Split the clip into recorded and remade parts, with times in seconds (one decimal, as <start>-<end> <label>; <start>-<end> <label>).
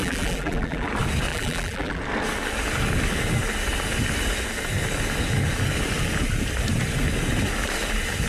0.0-0.9 remade; 0.9-1.3 recorded; 1.3-2.0 remade; 2.0-8.3 recorded